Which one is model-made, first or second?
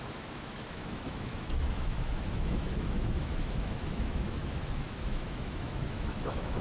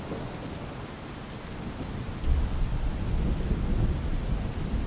first